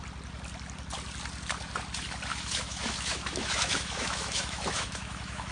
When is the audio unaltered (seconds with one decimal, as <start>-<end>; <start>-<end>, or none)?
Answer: 0.0-2.3